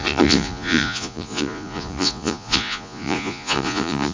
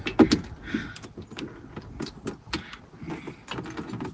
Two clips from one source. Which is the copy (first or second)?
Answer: first